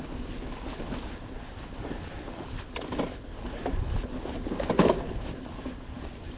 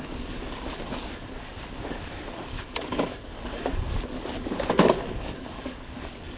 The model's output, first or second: second